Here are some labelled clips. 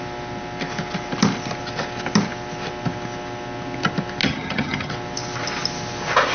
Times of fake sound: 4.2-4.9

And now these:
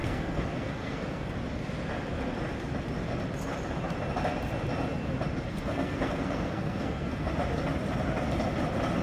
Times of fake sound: 0.0-1.3; 5.5-7.3

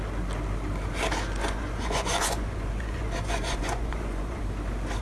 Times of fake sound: 1.4-4.4

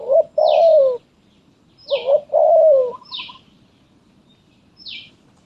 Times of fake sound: 1.8-5.1

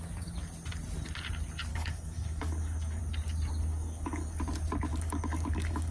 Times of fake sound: 1.7-3.0; 3.7-4.4; 4.9-5.9

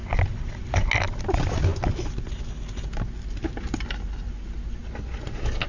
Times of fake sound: none

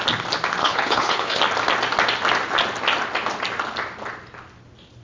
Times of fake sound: 0.6-1.4